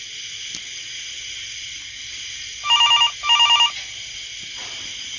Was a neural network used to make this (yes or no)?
no